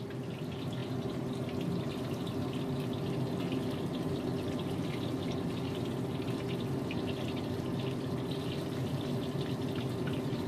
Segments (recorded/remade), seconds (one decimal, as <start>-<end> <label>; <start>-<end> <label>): 0.0-10.5 recorded

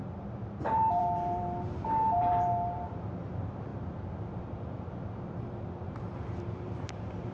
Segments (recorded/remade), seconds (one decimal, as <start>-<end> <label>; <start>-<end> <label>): 0.0-3.7 remade; 3.7-5.8 recorded; 5.8-7.3 remade

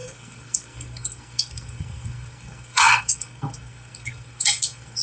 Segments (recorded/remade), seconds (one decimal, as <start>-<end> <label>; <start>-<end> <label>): 0.0-5.0 remade

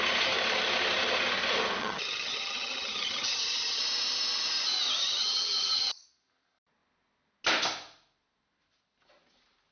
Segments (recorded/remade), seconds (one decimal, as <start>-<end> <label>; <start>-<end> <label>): 0.0-1.8 recorded; 1.8-3.8 remade; 3.8-5.0 recorded; 5.0-5.9 remade; 5.9-9.7 recorded